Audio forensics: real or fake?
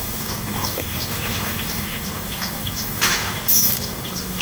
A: fake